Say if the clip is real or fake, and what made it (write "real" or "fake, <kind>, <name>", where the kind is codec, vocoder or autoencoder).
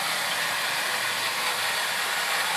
real